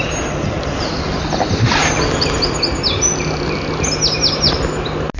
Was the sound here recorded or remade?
recorded